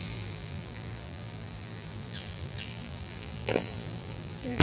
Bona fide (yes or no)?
no